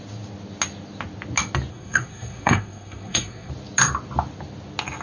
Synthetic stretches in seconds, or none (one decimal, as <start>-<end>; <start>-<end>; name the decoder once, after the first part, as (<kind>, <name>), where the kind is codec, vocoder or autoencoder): 1.7-3.5 (codec, SNAC)